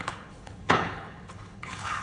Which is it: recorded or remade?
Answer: remade